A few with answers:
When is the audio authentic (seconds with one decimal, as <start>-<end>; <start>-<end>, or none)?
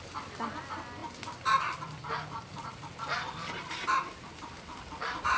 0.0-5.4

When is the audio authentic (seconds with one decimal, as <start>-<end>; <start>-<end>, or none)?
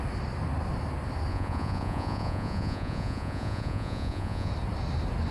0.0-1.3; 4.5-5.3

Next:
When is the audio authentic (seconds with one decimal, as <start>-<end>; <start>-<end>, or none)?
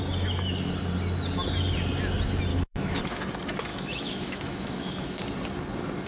0.0-2.5; 3.0-3.7; 5.2-6.1